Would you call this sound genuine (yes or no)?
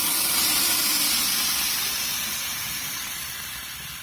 no